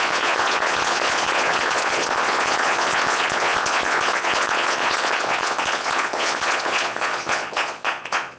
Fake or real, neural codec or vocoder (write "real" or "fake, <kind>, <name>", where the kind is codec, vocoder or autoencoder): fake, vocoder, Vocos